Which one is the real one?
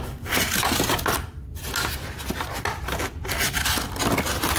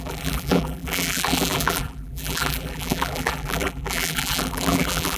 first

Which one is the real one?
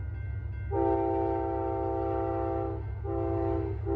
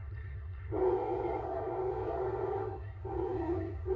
first